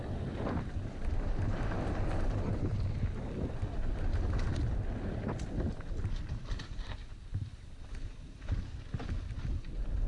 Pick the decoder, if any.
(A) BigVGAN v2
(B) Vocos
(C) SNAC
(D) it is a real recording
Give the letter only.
D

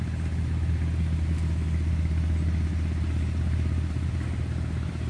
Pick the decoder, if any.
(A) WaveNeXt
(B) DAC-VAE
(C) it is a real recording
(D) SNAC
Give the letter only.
C